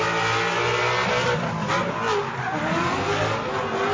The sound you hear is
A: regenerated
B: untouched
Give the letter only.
B